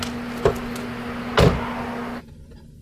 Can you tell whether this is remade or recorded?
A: recorded